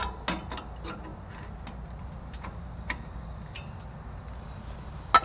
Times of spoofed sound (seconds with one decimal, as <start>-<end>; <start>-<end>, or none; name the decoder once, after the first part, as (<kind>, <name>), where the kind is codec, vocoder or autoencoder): none